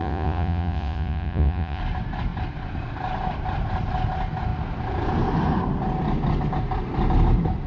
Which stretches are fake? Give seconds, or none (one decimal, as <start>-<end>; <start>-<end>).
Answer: 0.0-1.8